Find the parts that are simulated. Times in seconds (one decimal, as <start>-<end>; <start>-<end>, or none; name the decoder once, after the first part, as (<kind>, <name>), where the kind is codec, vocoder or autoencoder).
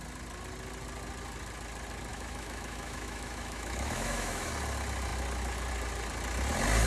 2.1-4.5 (autoencoder, DAC-VAE)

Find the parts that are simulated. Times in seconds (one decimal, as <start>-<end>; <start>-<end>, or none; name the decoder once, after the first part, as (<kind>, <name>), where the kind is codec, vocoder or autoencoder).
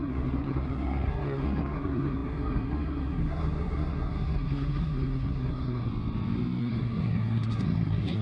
0.0-5.9 (codec, SNAC); 6.6-8.2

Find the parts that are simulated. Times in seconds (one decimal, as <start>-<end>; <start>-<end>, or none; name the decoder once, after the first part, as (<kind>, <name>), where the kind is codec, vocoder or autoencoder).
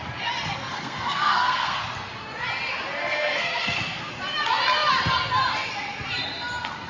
0.6-1.8 (codec, SNAC); 3.0-4.1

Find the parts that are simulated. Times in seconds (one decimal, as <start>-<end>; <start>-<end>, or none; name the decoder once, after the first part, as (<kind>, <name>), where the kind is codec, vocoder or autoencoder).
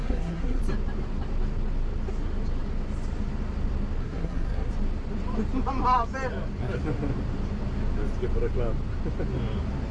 0.0-0.6 (codec, SNAC); 4.0-4.7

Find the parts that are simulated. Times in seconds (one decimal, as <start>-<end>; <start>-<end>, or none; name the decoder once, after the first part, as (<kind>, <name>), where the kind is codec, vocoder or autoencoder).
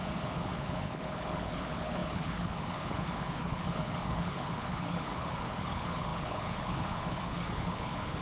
0.0-8.2 (codec, HILCodec)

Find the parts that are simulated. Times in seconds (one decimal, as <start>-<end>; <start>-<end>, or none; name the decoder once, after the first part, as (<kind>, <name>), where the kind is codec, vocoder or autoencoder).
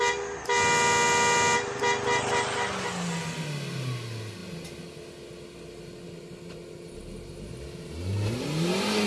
none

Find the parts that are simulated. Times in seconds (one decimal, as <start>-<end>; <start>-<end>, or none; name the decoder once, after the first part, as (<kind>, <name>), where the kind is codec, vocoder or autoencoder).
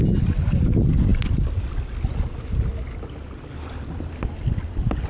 none